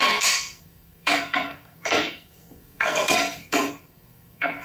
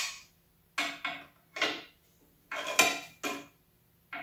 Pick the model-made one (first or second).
first